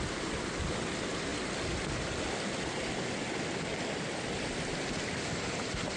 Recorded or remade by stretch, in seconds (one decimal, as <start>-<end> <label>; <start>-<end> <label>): 0.0-6.0 recorded